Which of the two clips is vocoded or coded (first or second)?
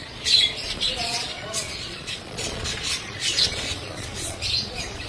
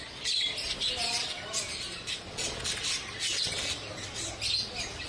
first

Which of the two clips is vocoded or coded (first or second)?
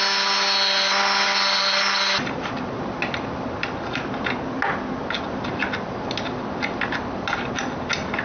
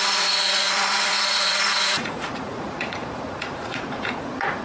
second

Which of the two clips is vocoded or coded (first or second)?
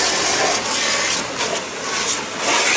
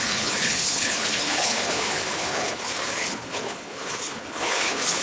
second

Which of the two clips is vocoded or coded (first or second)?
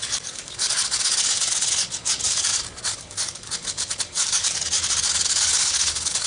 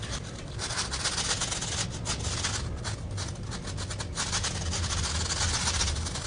first